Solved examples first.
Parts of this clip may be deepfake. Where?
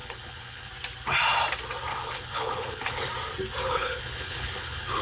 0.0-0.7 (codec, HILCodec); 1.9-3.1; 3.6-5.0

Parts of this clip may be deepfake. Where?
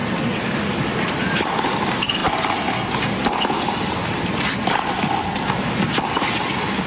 none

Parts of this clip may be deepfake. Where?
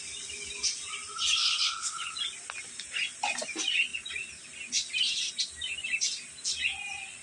1.4-2.1 (codec, HILCodec)